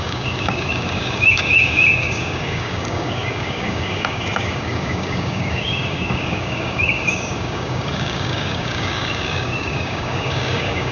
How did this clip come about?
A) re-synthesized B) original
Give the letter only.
A